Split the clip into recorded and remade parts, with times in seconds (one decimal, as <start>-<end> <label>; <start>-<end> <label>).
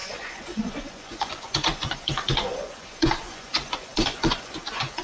0.0-5.0 remade